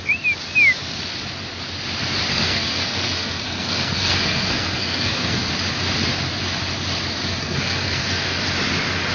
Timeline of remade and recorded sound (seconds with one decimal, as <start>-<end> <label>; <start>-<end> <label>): 0.0-2.3 recorded; 2.3-5.5 remade; 5.5-7.4 recorded; 7.4-8.4 remade; 8.4-9.1 recorded